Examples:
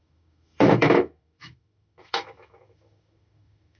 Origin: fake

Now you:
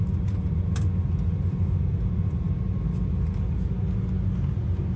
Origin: real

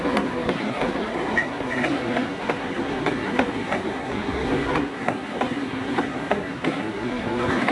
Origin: fake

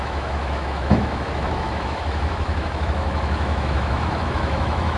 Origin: fake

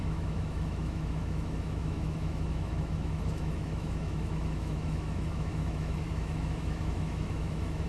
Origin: fake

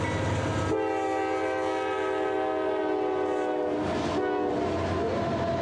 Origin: real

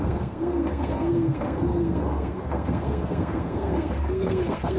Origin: fake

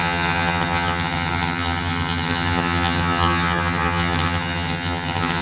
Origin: fake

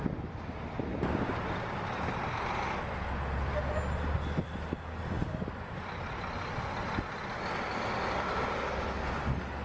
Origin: real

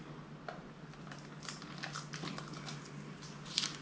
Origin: real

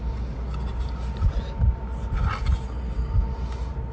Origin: real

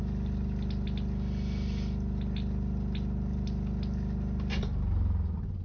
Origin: real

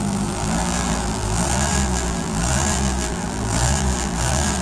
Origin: fake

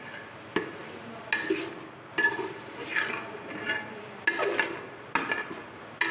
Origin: real